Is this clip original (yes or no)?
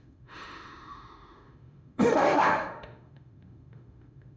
no